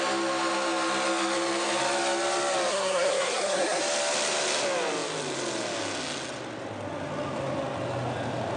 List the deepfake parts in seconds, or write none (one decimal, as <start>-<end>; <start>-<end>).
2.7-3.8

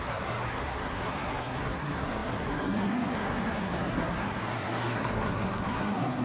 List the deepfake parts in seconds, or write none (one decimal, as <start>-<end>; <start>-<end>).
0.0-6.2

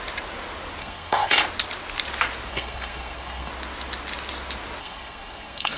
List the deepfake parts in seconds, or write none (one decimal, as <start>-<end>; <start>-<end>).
0.8-1.4; 2.5-3.5; 4.8-5.8